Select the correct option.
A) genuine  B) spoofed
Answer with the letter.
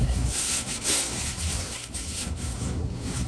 B